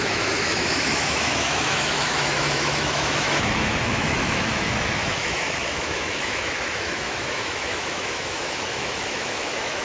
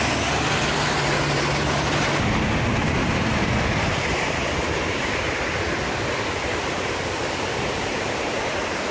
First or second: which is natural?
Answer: second